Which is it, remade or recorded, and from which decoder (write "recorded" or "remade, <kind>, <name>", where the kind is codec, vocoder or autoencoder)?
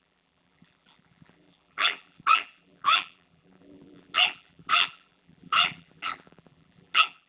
remade, vocoder, BigVGAN v2